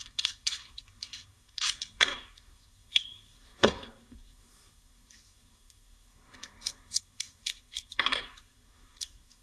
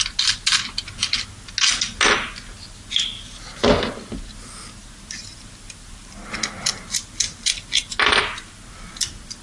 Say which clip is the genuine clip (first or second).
second